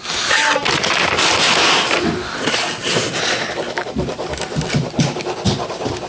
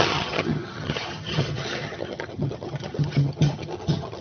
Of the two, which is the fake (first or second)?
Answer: second